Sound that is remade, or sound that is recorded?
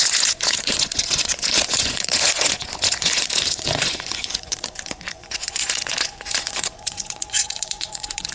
remade